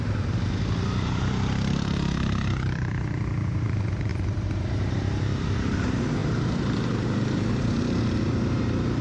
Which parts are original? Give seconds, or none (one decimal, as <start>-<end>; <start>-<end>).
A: none